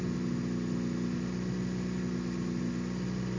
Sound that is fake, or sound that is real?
real